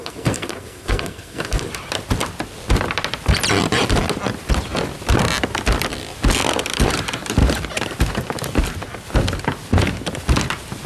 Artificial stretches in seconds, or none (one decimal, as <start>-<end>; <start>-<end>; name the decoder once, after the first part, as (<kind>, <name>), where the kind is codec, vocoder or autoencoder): 0.0-1.7 (codec, SNAC)